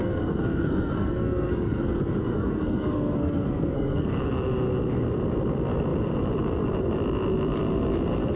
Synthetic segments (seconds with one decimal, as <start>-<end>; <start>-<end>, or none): 0.0-1.8; 2.2-4.1